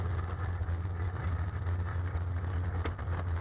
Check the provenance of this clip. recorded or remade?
recorded